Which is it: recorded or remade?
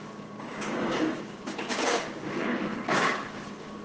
remade